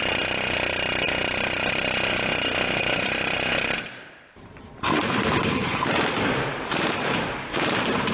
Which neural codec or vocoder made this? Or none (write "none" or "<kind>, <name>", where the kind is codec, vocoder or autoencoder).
vocoder, BigVGAN v2